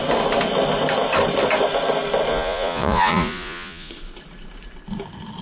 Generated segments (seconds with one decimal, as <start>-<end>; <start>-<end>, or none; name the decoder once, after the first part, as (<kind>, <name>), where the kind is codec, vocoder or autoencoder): 2.3-3.9 (vocoder, Vocos)